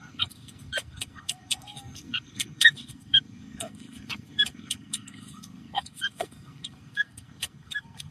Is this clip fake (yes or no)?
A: yes